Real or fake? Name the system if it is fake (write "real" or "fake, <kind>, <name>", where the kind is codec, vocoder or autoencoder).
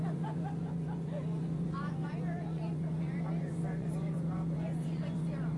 fake, vocoder, Vocos